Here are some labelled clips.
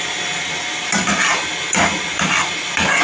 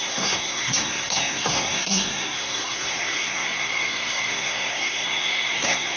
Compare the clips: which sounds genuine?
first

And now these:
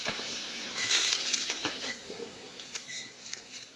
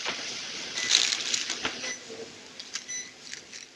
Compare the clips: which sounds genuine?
second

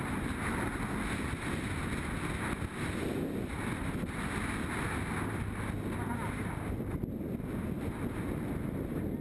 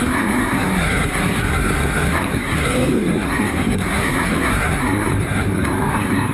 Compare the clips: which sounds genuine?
first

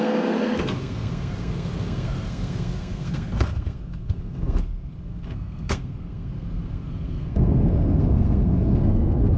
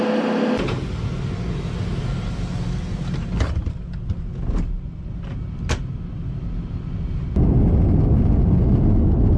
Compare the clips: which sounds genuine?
second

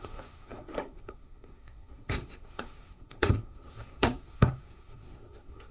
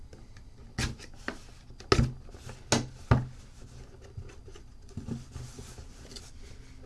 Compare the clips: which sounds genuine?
second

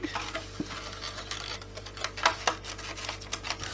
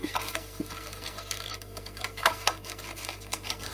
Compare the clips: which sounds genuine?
first